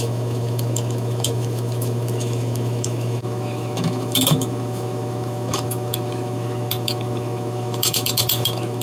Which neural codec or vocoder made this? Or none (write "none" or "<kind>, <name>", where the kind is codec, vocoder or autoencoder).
autoencoder, DAC-VAE